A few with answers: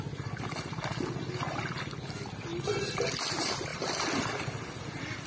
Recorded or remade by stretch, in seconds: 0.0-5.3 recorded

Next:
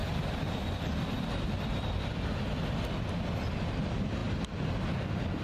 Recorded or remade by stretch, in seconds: 0.0-5.4 recorded

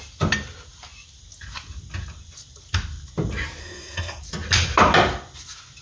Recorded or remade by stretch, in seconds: 0.0-3.6 recorded; 3.6-4.2 remade; 4.2-5.8 recorded

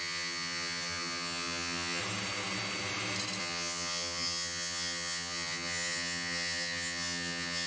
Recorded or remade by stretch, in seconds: 0.0-2.0 remade; 2.0-3.4 recorded; 3.4-7.7 remade

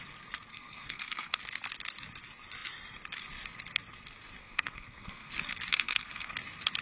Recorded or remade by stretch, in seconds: 0.0-0.5 recorded; 0.5-1.4 remade; 1.4-4.4 recorded; 4.4-5.3 remade; 5.3-5.7 recorded; 5.7-6.3 remade; 6.3-6.8 recorded

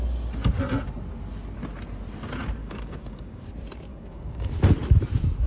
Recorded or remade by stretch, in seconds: 0.0-2.6 recorded; 2.6-3.5 remade; 3.5-3.9 recorded; 3.9-4.5 remade; 4.5-5.5 recorded